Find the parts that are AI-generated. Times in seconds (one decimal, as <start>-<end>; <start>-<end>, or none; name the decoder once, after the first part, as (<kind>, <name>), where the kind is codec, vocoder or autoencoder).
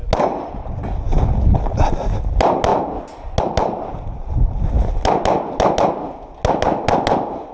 none